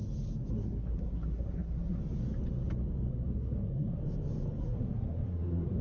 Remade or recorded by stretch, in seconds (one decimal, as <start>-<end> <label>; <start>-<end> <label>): 0.0-0.5 recorded; 0.5-2.0 remade; 2.0-3.1 recorded; 3.1-4.0 remade; 4.0-4.6 recorded; 4.6-5.8 remade